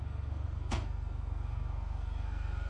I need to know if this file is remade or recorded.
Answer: remade